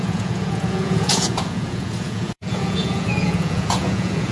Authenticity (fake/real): fake